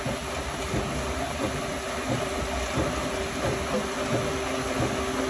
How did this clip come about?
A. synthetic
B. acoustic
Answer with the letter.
B